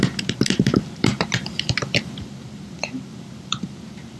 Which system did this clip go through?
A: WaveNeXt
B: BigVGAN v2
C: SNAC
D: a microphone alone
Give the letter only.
B